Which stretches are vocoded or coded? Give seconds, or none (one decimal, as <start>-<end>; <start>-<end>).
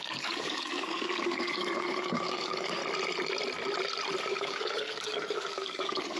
0.0-2.8; 4.2-6.2